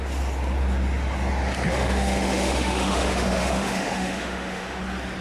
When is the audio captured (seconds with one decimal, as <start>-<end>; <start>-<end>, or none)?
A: 0.0-1.7; 4.8-5.2

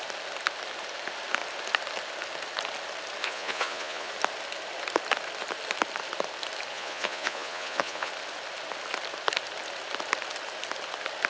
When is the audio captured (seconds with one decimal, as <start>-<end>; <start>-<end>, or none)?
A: 0.0-3.2; 4.1-6.7; 8.1-11.3